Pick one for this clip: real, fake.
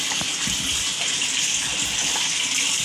real